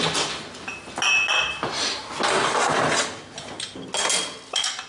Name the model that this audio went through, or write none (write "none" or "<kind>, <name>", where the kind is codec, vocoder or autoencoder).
none